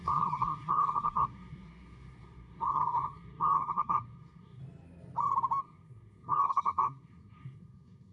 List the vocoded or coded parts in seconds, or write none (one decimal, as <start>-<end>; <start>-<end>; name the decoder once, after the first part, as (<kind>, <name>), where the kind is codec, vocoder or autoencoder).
0.0-4.6 (codec, SNAC); 5.6-8.1